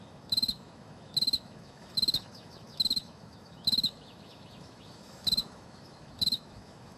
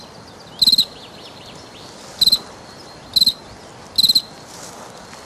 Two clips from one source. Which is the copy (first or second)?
first